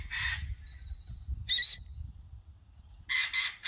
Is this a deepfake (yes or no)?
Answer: no